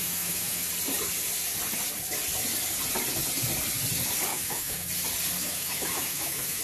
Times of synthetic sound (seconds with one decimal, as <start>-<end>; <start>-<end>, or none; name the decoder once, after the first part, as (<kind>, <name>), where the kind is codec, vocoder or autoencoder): 0.0-0.7 (autoencoder, DAC-VAE); 4.3-4.9; 5.4-6.6